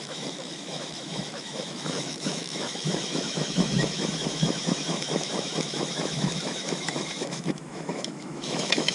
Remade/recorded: remade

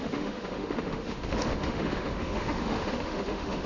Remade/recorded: remade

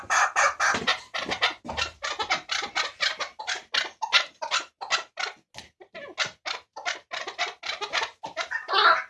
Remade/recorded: recorded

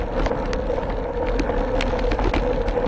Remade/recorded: recorded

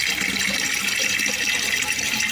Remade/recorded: recorded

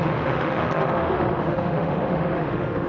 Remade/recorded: remade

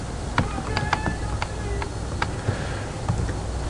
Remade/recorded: recorded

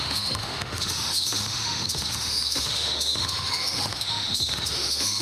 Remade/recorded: remade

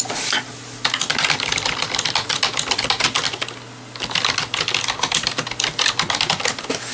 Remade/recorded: recorded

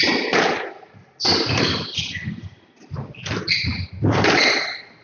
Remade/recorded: recorded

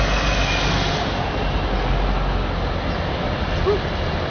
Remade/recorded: recorded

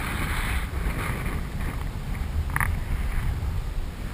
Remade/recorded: recorded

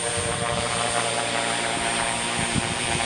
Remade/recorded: recorded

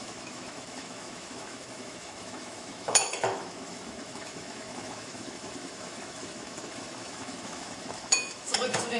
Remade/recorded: remade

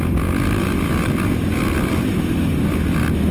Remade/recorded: recorded